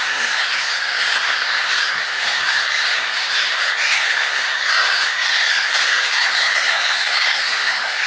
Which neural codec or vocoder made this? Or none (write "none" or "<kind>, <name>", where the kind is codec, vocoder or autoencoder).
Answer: codec, SNAC